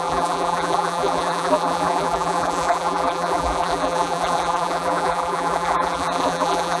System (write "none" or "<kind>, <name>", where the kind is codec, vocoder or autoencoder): vocoder, BigVGAN v2